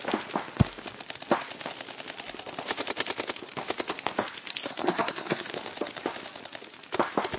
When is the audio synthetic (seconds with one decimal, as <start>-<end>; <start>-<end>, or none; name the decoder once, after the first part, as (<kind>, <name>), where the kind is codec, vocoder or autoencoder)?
4.6-5.5 (codec, SNAC)